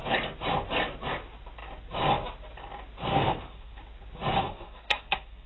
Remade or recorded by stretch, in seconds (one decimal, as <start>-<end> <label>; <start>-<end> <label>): 0.0-3.1 recorded; 3.1-3.8 remade; 3.8-4.4 recorded; 4.4-5.5 remade